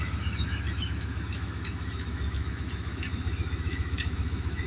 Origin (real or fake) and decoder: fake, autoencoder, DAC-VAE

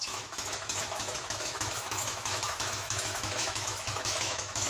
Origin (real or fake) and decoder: fake, autoencoder, DAC-VAE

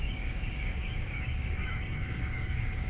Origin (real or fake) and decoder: fake, codec, DAC